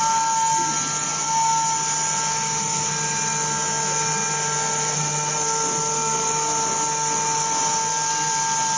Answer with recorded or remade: recorded